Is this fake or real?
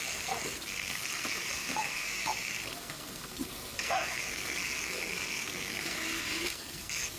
fake